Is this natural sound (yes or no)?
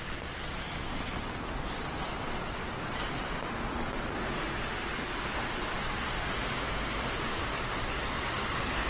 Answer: yes